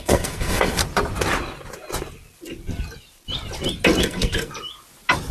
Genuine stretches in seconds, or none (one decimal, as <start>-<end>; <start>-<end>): 0.8-4.0; 4.5-5.3